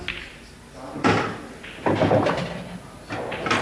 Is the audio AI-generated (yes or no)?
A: no